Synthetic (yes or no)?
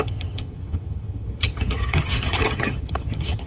yes